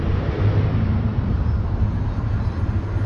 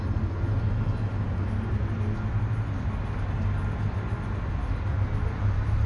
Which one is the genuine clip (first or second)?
second